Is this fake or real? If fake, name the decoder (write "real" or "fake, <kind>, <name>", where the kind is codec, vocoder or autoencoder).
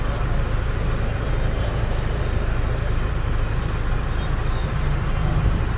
real